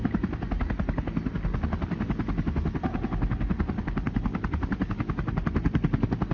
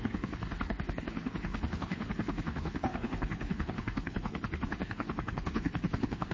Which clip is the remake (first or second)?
second